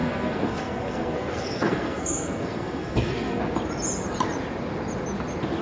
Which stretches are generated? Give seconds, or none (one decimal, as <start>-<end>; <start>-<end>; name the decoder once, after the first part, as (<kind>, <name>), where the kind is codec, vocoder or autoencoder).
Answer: 0.0-3.4 (codec, SNAC)